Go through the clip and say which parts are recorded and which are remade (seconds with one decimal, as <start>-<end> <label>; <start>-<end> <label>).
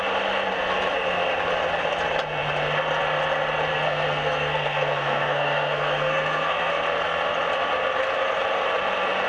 0.0-3.7 recorded; 3.7-6.7 remade; 6.7-9.3 recorded